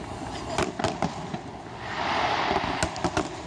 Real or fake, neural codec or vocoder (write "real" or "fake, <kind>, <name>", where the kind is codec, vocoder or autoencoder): real